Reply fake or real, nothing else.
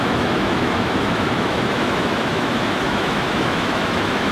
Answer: fake